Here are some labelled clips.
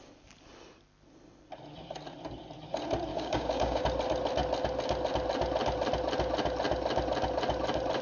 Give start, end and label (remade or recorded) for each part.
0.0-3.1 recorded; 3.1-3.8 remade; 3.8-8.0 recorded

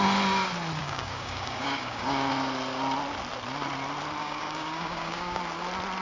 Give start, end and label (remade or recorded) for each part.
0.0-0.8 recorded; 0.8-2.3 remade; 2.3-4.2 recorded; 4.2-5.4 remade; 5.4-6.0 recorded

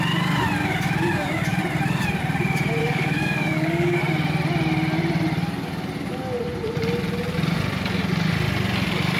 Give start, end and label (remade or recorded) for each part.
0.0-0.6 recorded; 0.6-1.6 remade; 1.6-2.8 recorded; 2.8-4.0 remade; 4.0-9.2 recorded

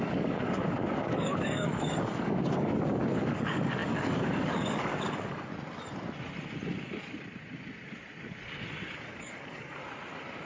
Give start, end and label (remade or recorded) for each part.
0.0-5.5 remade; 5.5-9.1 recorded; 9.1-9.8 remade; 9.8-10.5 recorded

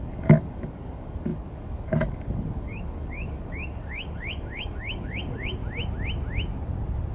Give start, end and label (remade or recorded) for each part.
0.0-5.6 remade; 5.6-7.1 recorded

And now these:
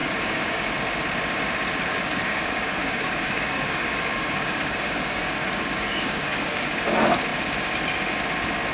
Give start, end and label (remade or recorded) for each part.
0.0-0.7 remade; 0.7-1.9 recorded; 1.9-6.8 remade; 6.8-8.7 recorded

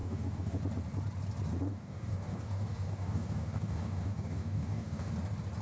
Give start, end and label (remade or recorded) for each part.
0.0-0.6 remade; 0.6-1.7 recorded; 1.7-5.1 remade; 5.1-5.6 recorded

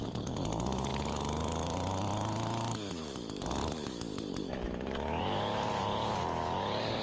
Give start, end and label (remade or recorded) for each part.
0.0-7.0 remade